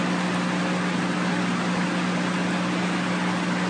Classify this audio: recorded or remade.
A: recorded